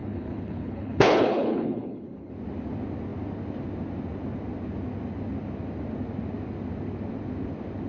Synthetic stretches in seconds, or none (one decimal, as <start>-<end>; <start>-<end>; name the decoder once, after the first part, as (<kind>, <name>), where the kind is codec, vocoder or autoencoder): 0.0-2.3 (codec, HILCodec)